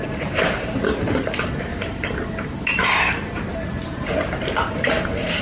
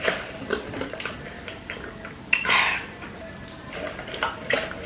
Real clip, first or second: second